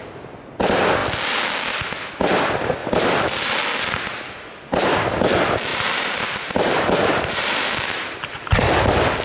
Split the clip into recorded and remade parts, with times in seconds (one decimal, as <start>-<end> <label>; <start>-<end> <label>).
0.0-2.8 recorded; 2.8-3.5 remade; 3.5-5.7 recorded; 5.7-7.7 remade; 7.7-9.2 recorded